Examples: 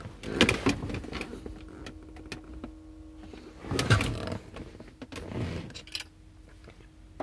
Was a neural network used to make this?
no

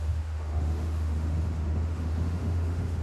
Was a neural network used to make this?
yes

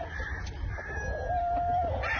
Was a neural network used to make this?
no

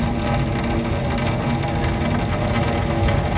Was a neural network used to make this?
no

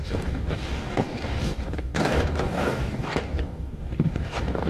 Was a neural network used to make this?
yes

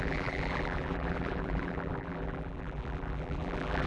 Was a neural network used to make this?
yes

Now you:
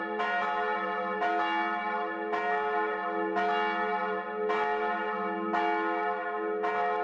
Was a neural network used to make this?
no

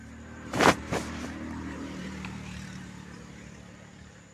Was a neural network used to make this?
yes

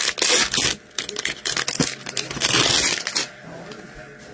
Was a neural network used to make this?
no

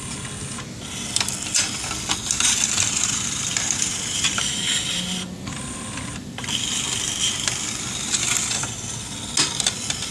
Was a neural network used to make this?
no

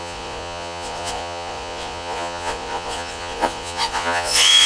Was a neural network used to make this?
yes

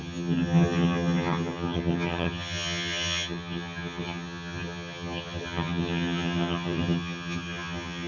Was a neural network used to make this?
yes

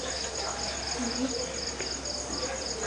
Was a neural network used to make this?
no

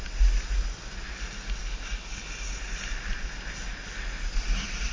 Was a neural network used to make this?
no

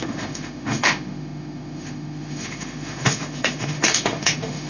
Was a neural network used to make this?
yes